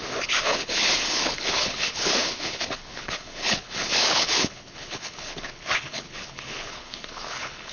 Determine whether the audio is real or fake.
fake